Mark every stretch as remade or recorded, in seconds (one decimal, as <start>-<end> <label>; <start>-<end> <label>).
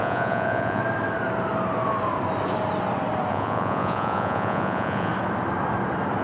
0.0-0.8 remade; 0.8-3.3 recorded; 3.3-5.1 remade; 5.1-6.2 recorded